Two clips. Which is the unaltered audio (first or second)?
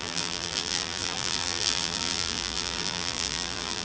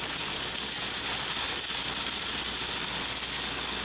second